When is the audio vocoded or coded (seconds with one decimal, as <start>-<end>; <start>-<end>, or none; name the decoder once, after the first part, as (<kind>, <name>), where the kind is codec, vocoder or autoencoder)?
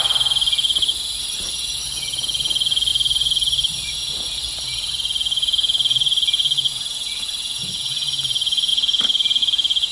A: none